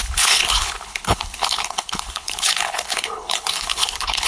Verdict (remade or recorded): remade